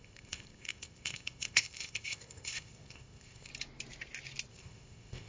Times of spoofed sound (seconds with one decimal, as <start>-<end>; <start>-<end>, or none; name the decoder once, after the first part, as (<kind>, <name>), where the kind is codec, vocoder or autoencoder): 0.0-3.5 (codec, ZipCodec); 4.5-5.3